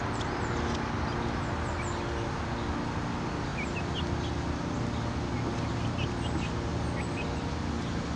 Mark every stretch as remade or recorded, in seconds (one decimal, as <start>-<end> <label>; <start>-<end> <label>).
0.0-8.2 recorded